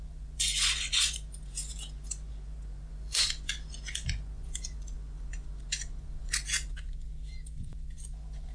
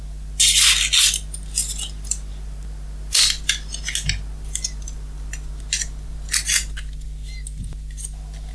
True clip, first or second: second